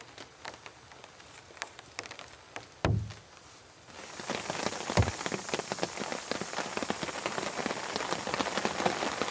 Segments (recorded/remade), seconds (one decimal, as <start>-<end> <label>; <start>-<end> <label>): 0.0-9.3 recorded